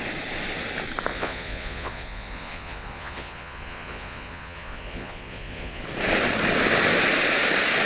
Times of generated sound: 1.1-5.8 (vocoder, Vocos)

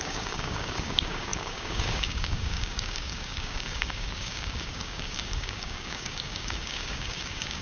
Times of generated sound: 0.0-7.6 (codec, DAC)